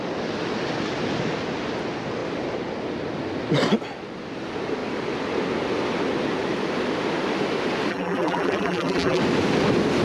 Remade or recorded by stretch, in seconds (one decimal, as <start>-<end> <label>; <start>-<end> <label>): 0.0-7.9 recorded; 7.9-9.2 remade; 9.2-10.0 recorded